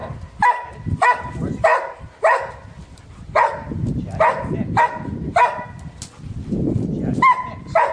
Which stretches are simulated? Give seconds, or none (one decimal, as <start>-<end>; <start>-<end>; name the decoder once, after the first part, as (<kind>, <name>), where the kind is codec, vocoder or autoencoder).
none